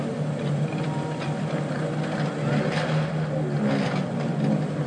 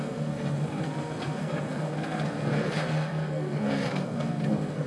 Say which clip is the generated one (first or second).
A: second